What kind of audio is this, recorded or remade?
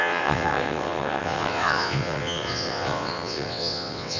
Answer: remade